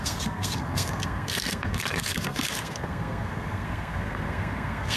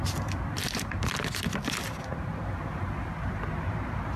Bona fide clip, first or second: second